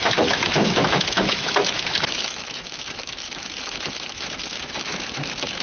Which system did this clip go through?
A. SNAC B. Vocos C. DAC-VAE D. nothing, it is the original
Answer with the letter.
C